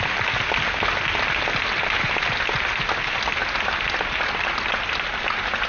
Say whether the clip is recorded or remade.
recorded